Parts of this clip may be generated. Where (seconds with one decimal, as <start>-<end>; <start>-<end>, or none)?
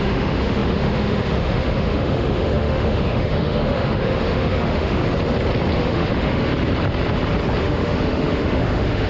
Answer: 0.0-5.0; 5.8-6.5; 7.6-9.1